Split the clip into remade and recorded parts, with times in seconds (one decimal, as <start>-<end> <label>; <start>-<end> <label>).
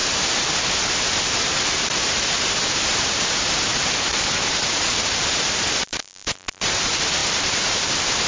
0.0-1.2 recorded; 1.2-8.3 remade